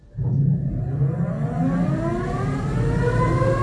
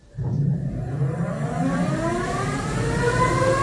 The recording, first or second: first